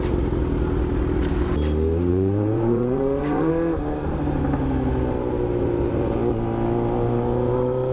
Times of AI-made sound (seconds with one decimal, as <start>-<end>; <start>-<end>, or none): 2.1-3.5